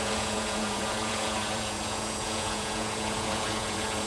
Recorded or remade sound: remade